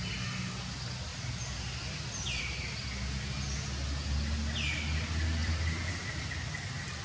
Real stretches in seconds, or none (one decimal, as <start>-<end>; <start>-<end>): 0.0-5.4; 5.9-7.0